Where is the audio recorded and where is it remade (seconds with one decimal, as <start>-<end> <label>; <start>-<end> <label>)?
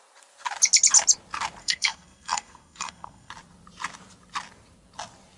0.0-1.6 recorded; 1.6-3.3 remade; 3.3-5.4 recorded